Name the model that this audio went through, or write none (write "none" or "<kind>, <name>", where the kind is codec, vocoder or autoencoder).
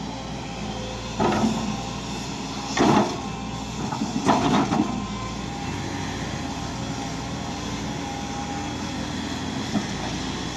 none